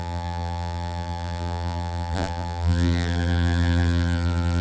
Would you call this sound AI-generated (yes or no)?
yes